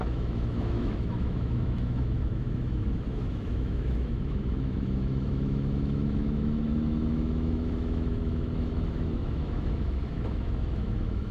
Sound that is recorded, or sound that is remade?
remade